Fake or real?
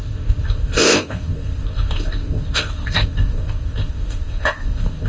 fake